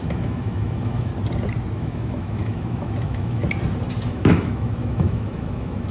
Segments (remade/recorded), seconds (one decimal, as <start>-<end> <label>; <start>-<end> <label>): 0.0-1.1 remade; 1.1-1.7 recorded; 1.7-3.4 remade; 3.4-4.1 recorded; 4.1-5.9 remade